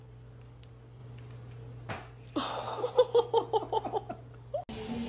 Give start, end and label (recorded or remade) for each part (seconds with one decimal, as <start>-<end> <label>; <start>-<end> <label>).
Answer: 0.0-5.1 recorded